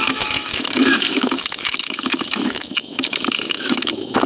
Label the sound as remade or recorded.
remade